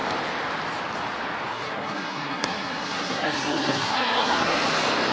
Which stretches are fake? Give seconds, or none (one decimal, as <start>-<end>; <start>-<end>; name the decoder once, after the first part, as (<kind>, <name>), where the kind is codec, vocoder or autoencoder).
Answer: 1.5-4.6 (codec, SNAC)